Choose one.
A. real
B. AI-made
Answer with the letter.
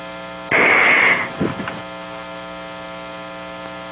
A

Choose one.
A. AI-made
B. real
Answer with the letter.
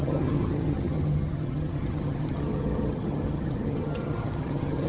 A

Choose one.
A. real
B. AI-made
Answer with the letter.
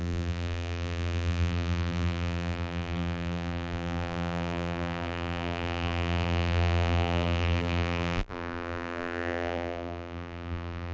B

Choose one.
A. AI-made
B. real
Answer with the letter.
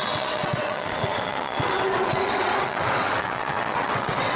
A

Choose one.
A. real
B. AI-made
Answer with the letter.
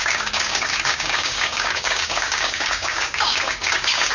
B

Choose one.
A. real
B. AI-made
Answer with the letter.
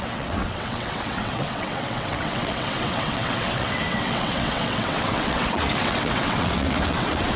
B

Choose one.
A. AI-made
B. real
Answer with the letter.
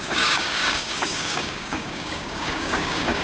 A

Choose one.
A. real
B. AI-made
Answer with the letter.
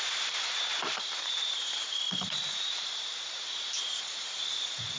B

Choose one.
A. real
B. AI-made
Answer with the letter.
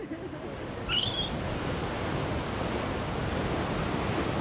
A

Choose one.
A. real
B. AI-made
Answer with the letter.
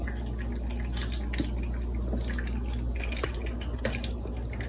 A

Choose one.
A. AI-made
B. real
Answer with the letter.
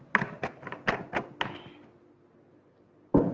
B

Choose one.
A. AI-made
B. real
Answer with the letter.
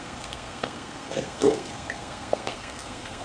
A